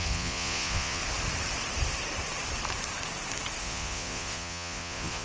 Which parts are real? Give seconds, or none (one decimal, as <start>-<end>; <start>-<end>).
1.0-3.6

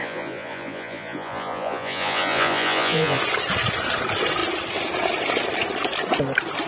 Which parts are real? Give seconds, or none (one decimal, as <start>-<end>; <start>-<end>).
3.2-6.7

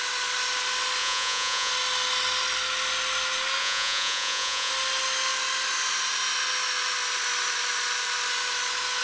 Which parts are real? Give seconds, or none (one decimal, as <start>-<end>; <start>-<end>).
0.0-1.0; 1.7-3.6; 4.7-9.0

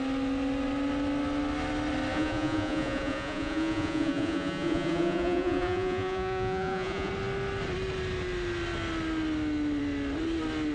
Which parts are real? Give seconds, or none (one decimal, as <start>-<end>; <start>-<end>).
0.0-2.1; 7.1-10.7

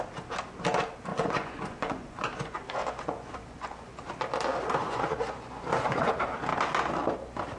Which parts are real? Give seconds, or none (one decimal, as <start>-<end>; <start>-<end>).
0.0-1.1; 4.1-4.8; 6.1-7.6